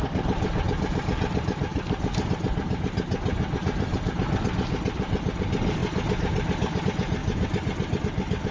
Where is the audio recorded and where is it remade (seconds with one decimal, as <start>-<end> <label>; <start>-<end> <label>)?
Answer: 0.0-8.5 recorded